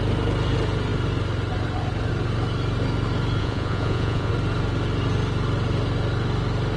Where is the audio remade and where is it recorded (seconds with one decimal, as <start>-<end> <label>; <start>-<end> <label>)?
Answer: 0.0-3.4 recorded; 3.4-4.3 remade; 4.3-6.8 recorded